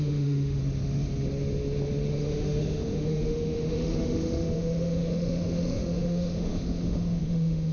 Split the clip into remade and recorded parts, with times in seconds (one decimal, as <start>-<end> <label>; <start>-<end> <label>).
0.0-0.6 remade; 0.6-2.1 recorded; 2.1-7.7 remade